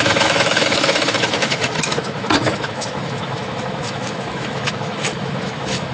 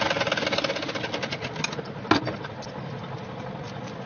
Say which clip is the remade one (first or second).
first